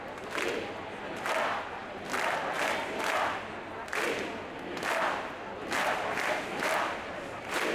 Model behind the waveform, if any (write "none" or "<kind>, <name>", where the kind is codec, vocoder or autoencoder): none